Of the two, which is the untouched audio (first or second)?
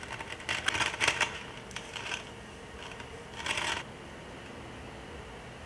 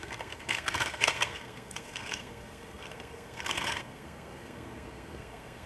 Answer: first